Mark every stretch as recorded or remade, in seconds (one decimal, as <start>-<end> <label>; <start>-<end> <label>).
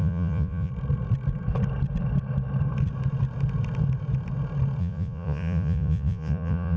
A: 0.0-0.7 remade; 0.7-4.8 recorded; 4.8-6.8 remade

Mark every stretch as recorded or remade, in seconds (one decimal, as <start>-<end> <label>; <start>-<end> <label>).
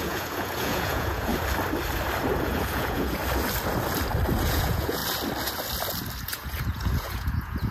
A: 0.0-1.3 remade; 1.3-2.4 recorded; 2.4-3.2 remade; 3.2-4.4 recorded; 4.4-5.0 remade; 5.0-6.2 recorded; 6.2-7.7 remade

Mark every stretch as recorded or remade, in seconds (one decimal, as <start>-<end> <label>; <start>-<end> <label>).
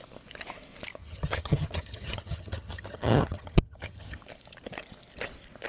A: 0.0-1.0 recorded; 1.0-4.2 remade; 4.2-5.7 recorded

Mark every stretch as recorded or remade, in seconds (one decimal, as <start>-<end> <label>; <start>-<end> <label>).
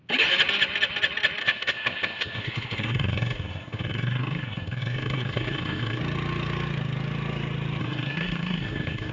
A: 0.0-1.4 recorded; 1.4-6.0 remade; 6.0-7.8 recorded; 7.8-9.1 remade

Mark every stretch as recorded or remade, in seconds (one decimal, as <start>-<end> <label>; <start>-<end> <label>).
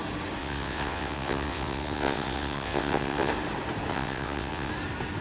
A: 0.0-0.4 recorded; 0.4-3.3 remade; 3.3-3.9 recorded; 3.9-4.7 remade; 4.7-5.2 recorded